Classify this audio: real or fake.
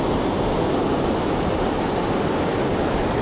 real